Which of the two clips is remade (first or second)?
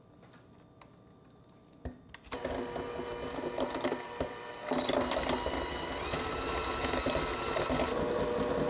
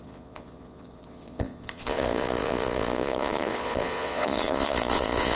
second